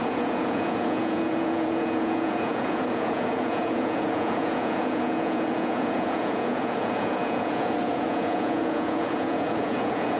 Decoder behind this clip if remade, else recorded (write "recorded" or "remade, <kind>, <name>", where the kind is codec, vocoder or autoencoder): remade, vocoder, Vocos